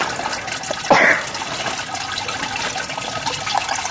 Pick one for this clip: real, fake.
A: real